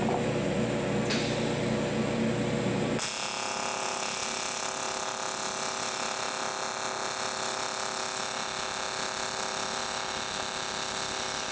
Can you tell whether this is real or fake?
real